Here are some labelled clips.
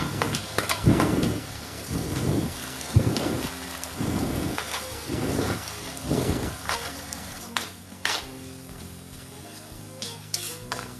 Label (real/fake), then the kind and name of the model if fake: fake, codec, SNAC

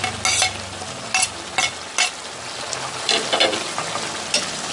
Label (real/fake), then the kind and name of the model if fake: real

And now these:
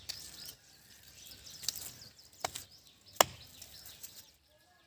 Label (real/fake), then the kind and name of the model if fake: real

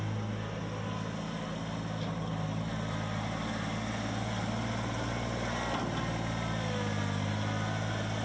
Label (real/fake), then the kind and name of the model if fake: real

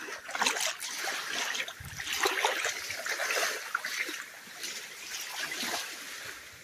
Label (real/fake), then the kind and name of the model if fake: real